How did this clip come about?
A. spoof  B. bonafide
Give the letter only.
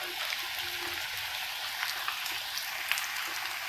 B